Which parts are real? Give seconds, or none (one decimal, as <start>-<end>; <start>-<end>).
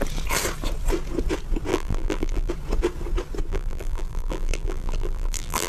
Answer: 0.0-1.7; 2.5-3.5